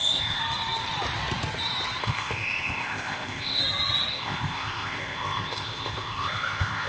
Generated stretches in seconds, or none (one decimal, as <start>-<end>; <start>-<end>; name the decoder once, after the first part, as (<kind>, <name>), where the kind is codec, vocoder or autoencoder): 0.0-0.4 (codec, ZipCodec); 2.0-3.6; 4.1-6.9